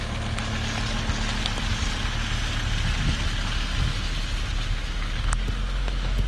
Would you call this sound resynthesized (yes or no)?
no